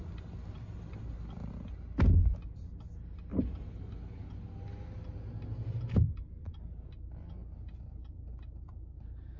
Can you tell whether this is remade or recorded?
recorded